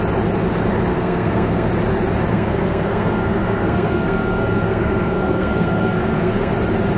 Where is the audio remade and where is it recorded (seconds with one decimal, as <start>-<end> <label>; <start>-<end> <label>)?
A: 0.0-0.9 recorded; 0.9-1.7 remade; 1.7-2.3 recorded; 2.3-6.5 remade; 6.5-7.0 recorded